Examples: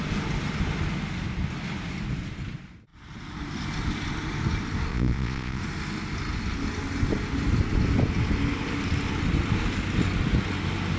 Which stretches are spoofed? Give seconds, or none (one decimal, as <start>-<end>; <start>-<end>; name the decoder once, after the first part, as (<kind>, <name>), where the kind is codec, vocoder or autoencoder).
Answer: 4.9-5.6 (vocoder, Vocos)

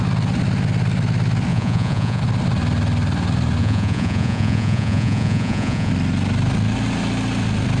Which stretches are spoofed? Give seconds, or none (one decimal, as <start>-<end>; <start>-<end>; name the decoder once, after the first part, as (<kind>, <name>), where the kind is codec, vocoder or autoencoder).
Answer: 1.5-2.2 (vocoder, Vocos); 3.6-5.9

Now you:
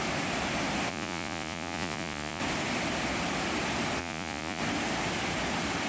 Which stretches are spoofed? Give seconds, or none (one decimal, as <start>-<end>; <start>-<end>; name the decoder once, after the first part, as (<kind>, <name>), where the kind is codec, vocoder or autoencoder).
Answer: 0.9-2.4 (vocoder, Vocos); 4.0-4.6

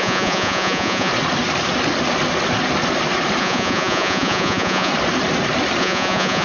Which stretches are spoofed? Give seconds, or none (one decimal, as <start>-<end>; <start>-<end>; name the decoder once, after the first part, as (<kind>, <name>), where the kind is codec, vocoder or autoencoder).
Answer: 0.0-1.1 (vocoder, Vocos); 3.4-4.9; 5.8-6.4